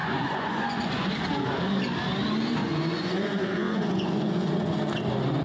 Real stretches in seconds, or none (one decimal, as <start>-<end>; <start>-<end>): 1.1-2.6; 4.8-5.4